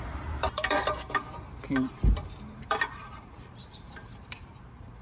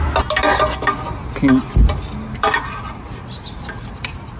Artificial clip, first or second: first